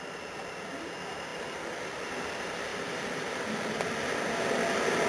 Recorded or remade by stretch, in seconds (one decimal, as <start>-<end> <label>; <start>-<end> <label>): 0.0-1.3 recorded; 1.3-2.1 remade; 2.1-2.7 recorded; 2.7-3.5 remade; 3.5-5.1 recorded